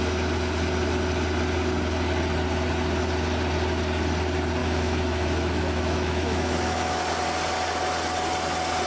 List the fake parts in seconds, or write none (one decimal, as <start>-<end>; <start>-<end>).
4.6-7.0